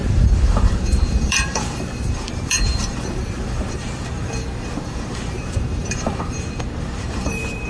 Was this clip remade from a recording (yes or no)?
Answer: yes